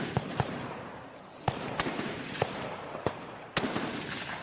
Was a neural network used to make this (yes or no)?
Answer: yes